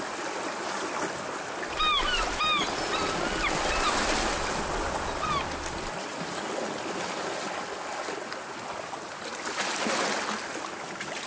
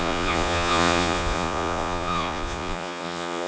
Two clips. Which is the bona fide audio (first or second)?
first